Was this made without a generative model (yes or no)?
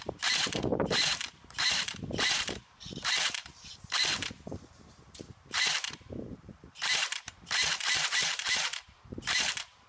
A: no